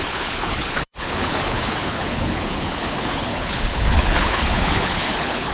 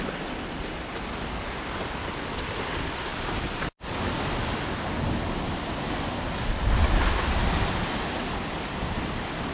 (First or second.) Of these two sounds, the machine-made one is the first